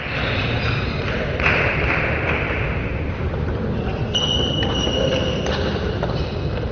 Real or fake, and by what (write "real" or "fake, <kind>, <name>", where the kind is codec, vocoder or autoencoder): real